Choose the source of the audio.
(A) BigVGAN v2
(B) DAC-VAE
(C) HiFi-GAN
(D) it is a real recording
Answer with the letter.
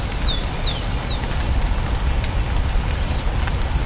D